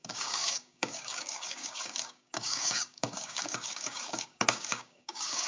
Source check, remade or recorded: remade